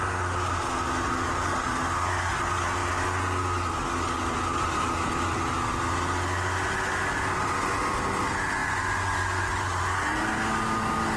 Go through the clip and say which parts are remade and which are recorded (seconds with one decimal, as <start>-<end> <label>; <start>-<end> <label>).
0.0-8.6 recorded; 8.6-9.7 remade; 9.7-11.2 recorded